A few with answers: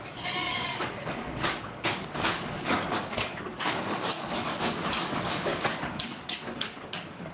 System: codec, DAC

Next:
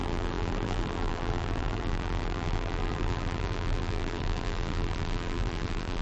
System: vocoder, BigVGAN v2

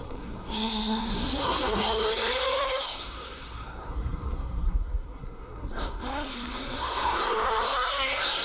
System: codec, SNAC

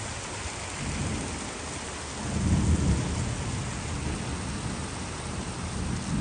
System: none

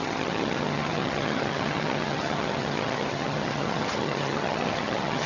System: vocoder, HiFi-GAN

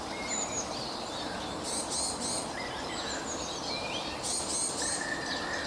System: none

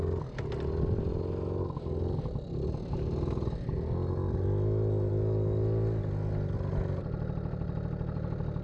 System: none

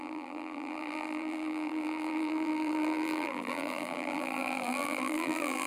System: vocoder, BigVGAN v2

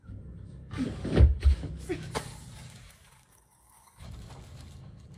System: codec, DAC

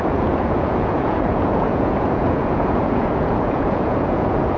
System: vocoder, Vocos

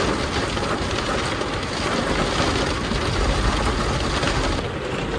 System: none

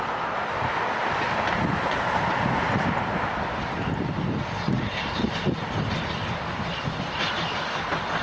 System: none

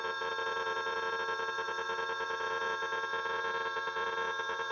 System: vocoder, Vocos